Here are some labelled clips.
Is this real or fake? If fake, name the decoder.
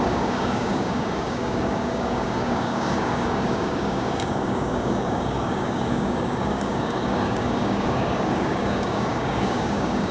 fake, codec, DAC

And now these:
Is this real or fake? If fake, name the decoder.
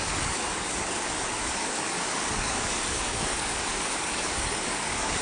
fake, codec, DAC